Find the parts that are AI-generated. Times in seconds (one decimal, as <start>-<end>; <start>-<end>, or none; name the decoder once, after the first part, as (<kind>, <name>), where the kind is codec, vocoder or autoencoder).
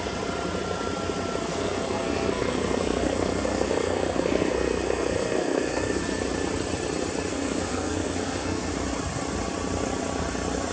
1.4-6.0 (codec, SNAC); 7.3-8.7